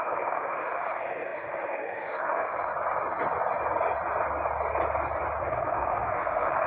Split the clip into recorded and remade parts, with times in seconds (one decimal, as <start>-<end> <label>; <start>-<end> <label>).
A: 0.0-2.7 remade; 2.7-5.4 recorded; 5.4-6.7 remade